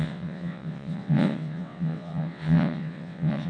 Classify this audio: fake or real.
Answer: fake